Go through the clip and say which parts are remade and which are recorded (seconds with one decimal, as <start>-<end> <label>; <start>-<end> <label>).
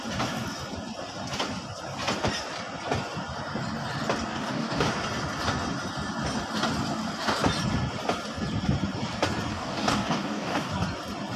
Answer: 0.0-4.3 recorded; 4.3-4.9 remade; 4.9-9.5 recorded; 9.5-10.7 remade; 10.7-11.4 recorded